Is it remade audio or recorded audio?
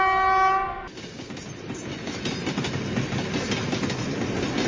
recorded